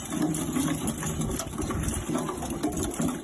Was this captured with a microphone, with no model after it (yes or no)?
yes